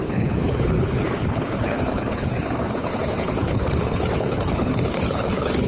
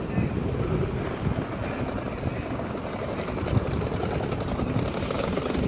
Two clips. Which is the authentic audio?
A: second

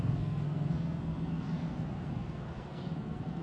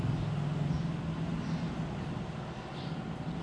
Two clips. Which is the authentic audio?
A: second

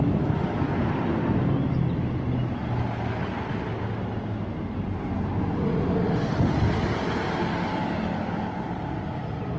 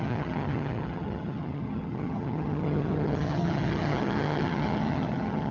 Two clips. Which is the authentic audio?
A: first